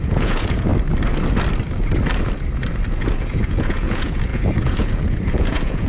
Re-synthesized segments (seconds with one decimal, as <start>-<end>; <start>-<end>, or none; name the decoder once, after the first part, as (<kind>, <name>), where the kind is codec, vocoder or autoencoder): 0.0-0.7 (vocoder, Vocos); 2.9-5.9